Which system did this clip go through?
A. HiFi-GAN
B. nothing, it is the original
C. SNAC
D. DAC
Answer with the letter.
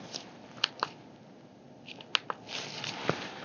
B